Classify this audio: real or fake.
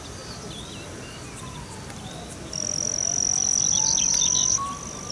real